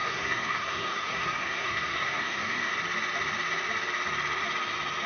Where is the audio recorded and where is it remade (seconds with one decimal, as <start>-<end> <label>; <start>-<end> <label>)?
0.0-2.7 remade; 2.7-5.1 recorded

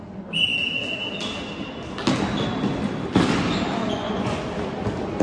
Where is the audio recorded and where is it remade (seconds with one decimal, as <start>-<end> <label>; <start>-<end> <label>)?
0.0-3.8 recorded; 3.8-4.4 remade; 4.4-5.2 recorded